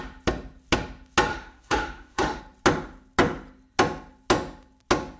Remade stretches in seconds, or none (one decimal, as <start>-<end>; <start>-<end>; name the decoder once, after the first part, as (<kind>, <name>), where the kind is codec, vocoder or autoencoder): 1.3-2.4 (autoencoder, DAC-VAE)